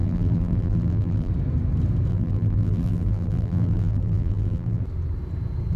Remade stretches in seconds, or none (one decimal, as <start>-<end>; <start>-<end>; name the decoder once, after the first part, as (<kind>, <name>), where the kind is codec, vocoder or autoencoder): 0.0-1.3 (vocoder, BigVGAN v2); 2.1-4.8

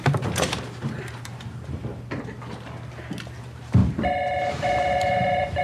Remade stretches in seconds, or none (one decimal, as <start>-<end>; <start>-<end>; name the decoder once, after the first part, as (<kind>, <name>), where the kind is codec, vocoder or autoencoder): 0.0-1.8 (vocoder, BigVGAN v2); 3.4-3.8; 4.5-5.6

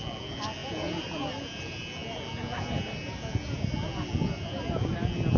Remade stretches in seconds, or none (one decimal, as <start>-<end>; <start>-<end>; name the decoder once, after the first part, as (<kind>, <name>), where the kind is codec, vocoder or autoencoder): none

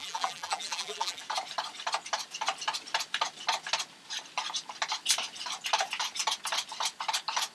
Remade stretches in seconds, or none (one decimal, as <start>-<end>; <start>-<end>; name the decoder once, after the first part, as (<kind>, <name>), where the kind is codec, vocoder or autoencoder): 0.0-1.2 (vocoder, BigVGAN v2)

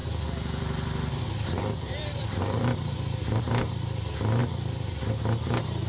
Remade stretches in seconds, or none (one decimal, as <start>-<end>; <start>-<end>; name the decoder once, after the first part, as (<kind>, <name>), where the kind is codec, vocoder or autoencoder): 0.0-3.4 (vocoder, BigVGAN v2); 4.4-5.1

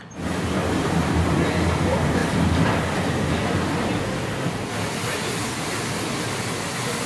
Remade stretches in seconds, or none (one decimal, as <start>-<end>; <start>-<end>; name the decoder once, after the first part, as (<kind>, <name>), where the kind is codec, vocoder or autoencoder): none

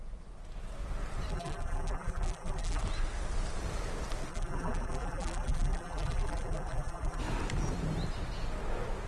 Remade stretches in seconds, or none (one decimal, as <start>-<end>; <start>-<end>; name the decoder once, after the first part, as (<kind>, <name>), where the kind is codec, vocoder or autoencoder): 1.3-2.8 (vocoder, BigVGAN v2); 4.3-7.2

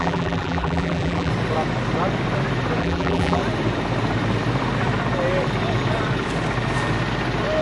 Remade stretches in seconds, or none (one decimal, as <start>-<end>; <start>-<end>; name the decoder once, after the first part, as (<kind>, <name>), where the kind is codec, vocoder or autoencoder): 0.0-1.3 (vocoder, BigVGAN v2); 2.8-3.4